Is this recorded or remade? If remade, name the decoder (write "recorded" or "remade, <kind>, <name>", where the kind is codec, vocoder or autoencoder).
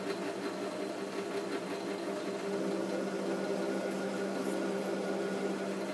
recorded